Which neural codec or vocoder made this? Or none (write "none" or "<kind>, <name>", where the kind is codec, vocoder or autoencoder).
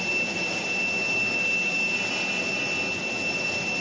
none